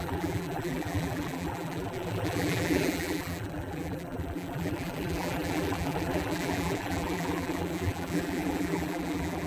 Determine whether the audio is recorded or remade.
remade